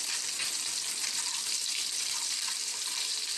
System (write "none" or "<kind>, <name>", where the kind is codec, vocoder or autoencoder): vocoder, BigVGAN v2